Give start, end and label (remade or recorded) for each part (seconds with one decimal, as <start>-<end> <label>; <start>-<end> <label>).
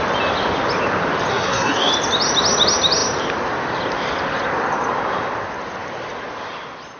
0.0-1.3 recorded; 1.3-1.9 remade; 1.9-7.0 recorded